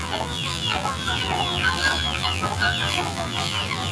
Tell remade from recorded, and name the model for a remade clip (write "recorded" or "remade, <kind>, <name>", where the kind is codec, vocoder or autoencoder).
remade, vocoder, BigVGAN v2